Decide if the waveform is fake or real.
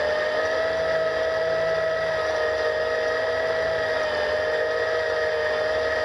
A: real